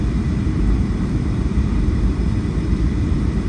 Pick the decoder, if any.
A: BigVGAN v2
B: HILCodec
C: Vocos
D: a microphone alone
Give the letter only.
A